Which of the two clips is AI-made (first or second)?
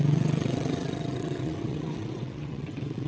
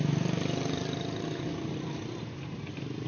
first